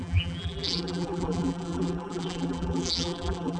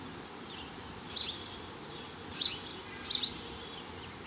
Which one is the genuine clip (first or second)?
second